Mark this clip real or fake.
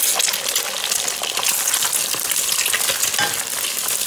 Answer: real